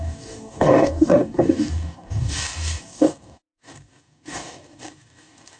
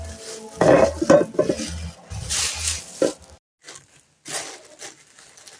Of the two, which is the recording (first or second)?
second